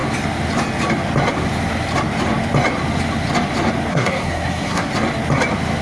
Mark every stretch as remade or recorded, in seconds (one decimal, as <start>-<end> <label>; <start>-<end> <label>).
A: 0.0-3.9 recorded; 3.9-4.9 remade; 4.9-5.8 recorded